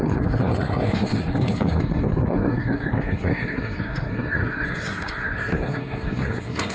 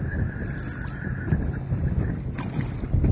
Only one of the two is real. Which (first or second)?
second